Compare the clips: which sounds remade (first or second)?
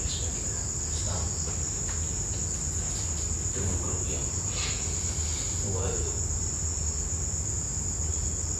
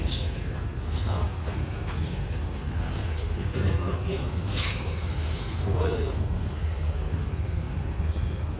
second